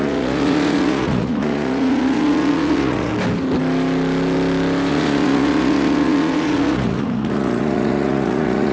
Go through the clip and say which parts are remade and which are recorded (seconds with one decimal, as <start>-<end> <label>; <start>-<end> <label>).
0.0-3.1 remade; 3.1-4.9 recorded; 4.9-8.7 remade